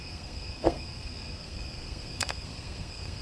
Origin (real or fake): fake